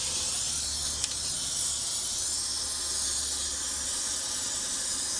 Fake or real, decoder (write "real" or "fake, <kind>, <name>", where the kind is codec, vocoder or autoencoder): real